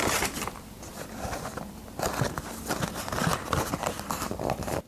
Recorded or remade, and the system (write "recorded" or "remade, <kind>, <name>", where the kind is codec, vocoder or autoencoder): recorded